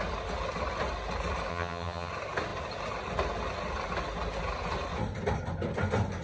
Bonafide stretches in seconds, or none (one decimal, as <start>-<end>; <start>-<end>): 0.0-1.5; 2.1-6.2